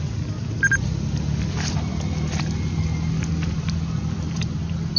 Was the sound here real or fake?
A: real